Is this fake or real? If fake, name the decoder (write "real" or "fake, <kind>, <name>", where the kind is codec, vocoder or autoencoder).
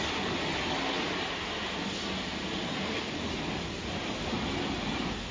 real